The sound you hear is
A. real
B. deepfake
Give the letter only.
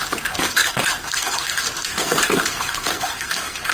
B